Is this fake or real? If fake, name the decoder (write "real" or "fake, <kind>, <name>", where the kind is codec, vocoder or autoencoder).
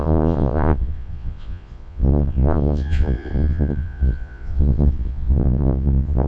fake, vocoder, Vocos